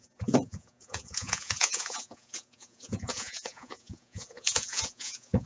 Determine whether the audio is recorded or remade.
remade